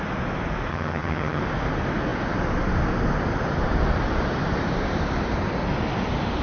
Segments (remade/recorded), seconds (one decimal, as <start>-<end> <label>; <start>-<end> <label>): 0.0-0.7 recorded; 0.7-1.4 remade; 1.4-6.4 recorded